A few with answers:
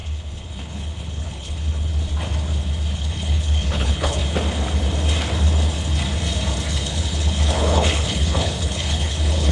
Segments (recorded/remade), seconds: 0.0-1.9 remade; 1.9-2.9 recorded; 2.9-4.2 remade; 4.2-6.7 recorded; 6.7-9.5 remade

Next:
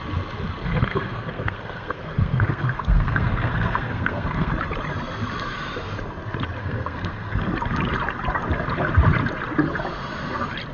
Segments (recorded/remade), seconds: 0.0-0.6 recorded; 0.6-4.5 remade; 4.5-6.6 recorded; 6.6-7.3 remade; 7.3-10.7 recorded

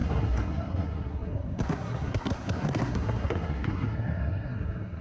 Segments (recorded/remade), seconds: 0.0-5.0 remade

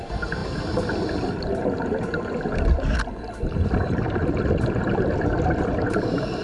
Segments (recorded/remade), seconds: 0.0-6.4 recorded